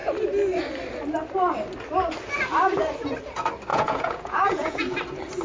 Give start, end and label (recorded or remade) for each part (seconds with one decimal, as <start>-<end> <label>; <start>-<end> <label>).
0.0-3.7 recorded; 3.7-4.8 remade; 4.8-5.4 recorded